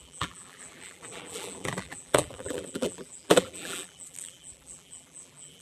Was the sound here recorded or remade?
remade